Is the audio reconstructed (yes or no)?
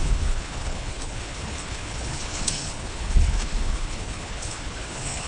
yes